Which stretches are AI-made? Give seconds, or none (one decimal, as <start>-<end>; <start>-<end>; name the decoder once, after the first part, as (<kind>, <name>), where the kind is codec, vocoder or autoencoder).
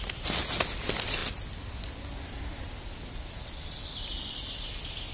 none